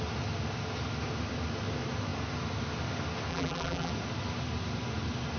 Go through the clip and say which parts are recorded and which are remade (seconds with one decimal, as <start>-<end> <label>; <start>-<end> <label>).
0.0-3.3 recorded; 3.3-3.9 remade; 3.9-5.4 recorded